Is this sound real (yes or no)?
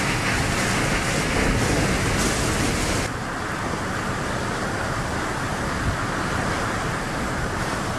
yes